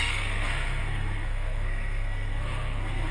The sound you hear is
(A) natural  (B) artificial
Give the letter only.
B